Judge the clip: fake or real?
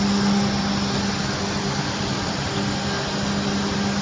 real